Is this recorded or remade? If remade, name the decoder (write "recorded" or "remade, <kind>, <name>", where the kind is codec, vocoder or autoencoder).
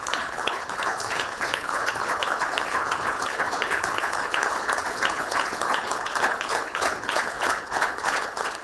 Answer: remade, codec, HILCodec